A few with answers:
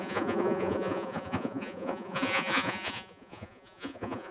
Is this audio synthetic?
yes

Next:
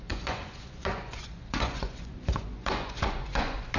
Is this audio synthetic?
yes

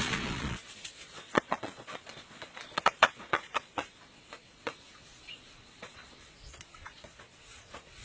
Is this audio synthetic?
yes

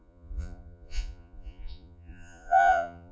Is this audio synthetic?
yes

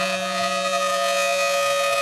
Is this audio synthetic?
yes